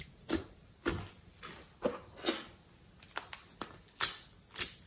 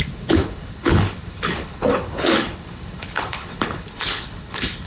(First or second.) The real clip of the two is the first